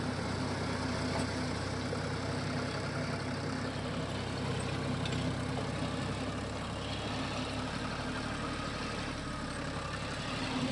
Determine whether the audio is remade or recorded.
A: recorded